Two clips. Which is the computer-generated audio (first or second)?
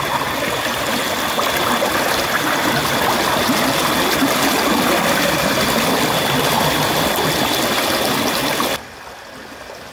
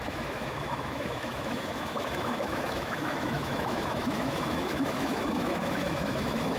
second